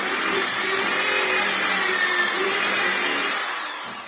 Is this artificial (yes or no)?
no